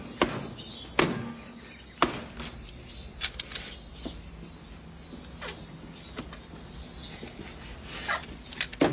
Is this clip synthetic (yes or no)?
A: no